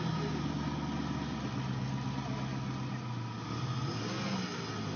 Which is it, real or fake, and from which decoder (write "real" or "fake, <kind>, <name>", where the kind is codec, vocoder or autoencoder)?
real